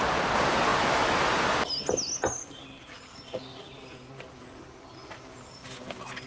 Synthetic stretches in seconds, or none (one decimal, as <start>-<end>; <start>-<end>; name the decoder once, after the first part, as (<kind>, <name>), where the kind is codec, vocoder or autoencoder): none